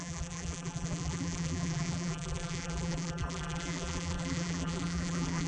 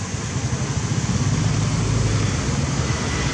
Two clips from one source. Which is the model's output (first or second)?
first